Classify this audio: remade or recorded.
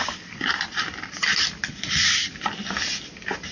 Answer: recorded